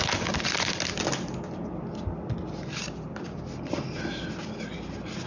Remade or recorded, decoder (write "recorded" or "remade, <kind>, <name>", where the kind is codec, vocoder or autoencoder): recorded